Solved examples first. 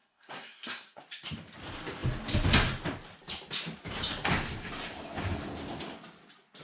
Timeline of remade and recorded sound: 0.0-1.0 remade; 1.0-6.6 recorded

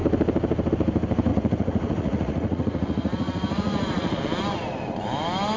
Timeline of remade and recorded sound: 0.0-1.3 recorded; 1.3-4.2 remade; 4.2-5.6 recorded